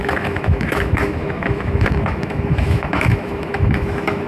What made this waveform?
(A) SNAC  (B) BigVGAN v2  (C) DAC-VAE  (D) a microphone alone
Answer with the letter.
C